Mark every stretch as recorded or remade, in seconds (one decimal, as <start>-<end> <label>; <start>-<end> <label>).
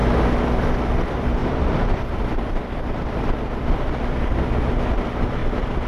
0.0-0.6 recorded; 0.6-5.4 remade; 5.4-5.9 recorded